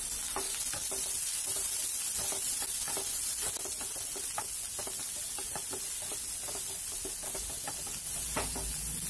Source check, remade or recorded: recorded